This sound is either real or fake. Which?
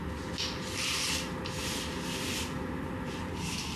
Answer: real